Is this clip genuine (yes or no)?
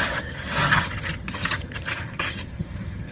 no